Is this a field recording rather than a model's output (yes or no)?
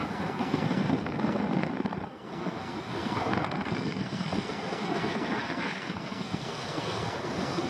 no